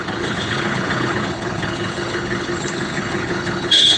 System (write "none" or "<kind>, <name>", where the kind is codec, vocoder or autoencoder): codec, HILCodec